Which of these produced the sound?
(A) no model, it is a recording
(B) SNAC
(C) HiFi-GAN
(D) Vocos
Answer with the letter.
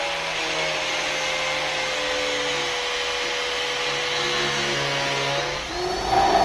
A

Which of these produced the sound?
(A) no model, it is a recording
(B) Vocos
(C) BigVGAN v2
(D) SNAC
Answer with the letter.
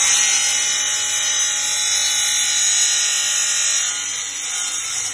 A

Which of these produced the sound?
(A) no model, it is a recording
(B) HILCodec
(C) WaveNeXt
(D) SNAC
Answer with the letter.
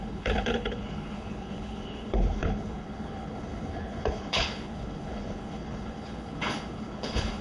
B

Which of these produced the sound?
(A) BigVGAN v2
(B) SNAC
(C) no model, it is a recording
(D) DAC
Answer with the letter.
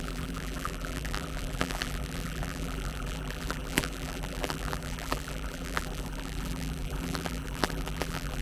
A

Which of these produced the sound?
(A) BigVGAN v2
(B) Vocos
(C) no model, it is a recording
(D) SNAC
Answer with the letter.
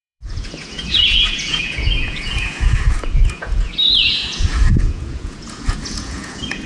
B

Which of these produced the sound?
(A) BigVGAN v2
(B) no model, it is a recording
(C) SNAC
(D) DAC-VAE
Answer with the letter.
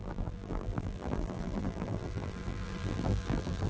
A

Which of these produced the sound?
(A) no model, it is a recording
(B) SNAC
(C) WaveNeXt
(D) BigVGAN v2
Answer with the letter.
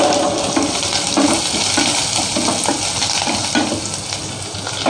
A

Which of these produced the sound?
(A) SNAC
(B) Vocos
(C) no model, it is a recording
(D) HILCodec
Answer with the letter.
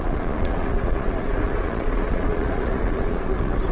B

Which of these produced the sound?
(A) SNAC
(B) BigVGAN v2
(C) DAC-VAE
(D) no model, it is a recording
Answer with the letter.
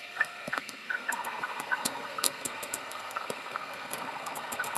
A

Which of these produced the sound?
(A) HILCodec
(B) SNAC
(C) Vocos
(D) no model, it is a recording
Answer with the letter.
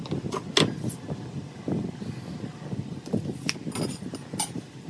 D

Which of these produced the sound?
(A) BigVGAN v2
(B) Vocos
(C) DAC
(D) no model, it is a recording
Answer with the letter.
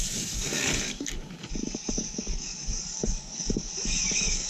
C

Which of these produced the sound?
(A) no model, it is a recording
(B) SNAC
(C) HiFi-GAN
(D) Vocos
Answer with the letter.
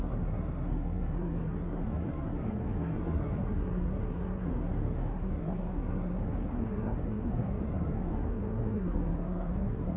B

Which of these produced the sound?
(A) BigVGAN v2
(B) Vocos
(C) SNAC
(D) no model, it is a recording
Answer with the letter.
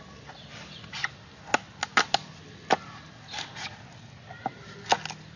D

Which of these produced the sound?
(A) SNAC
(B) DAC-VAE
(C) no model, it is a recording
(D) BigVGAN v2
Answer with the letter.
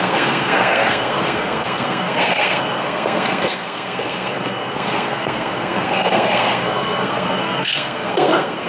A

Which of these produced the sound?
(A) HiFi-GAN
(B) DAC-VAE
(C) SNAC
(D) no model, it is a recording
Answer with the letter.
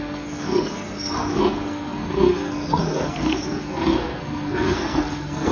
C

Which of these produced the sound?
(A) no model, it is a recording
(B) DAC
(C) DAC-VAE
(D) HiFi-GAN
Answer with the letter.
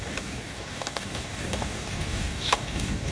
B